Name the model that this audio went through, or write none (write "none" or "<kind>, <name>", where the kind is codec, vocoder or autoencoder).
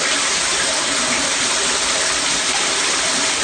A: vocoder, BigVGAN v2